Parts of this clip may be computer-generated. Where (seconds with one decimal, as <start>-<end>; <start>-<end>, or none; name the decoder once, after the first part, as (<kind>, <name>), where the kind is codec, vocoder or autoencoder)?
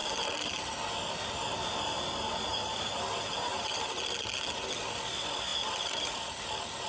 2.5-4.0 (vocoder, BigVGAN v2); 5.5-6.5